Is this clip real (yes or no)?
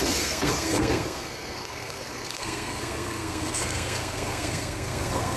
no